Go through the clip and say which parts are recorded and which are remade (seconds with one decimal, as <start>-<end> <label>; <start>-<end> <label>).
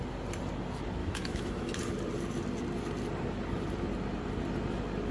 0.0-1.0 recorded; 1.0-1.7 remade; 1.7-5.1 recorded